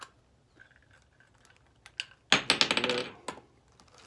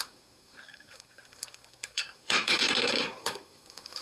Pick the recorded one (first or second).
first